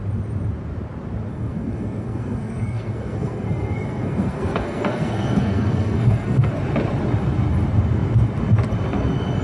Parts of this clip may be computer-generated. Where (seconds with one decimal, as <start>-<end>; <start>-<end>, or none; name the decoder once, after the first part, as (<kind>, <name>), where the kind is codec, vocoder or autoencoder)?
1.3-6.5 (codec, SNAC)

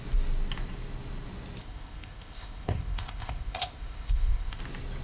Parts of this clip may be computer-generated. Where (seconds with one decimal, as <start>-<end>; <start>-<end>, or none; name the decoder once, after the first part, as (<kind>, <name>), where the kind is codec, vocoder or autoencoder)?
1.6-4.6 (codec, ZipCodec)

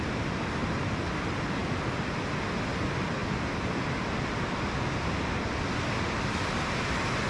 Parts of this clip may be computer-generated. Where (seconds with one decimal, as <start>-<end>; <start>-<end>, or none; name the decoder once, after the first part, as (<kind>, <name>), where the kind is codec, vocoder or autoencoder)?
none

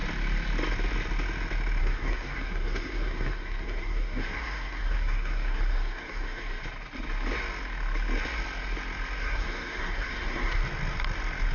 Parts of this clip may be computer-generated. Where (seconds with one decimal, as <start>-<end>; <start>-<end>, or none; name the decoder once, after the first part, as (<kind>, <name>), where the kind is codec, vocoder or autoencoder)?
1.8-6.6 (codec, SNAC); 9.2-10.6

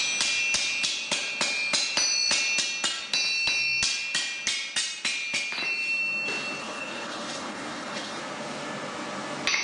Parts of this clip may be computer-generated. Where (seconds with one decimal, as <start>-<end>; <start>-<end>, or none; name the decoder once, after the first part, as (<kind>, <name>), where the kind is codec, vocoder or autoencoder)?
6.6-8.2 (codec, HILCodec)

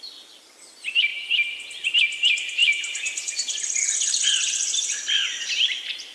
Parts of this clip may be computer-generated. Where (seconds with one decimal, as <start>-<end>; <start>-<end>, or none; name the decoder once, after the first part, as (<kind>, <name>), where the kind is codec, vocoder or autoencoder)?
1.1-1.7 (vocoder, BigVGAN v2); 2.6-4.5